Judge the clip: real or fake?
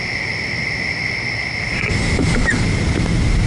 real